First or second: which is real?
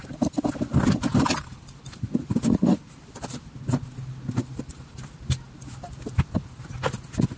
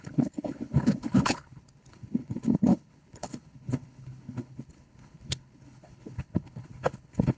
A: first